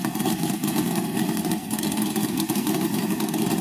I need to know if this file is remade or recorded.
remade